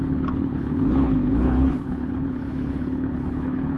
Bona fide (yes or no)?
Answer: no